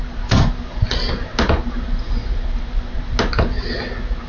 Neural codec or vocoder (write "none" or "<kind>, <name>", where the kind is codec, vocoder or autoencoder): none